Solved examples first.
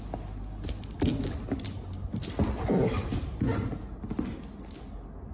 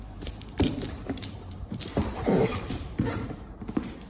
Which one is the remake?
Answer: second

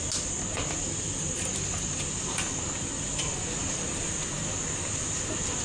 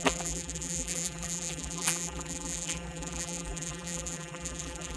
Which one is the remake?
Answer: second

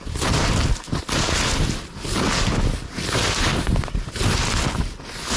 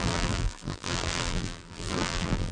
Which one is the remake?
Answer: second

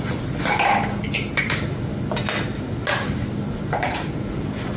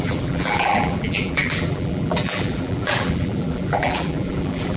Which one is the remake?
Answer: second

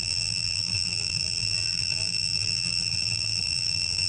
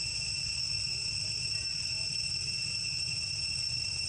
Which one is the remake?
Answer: first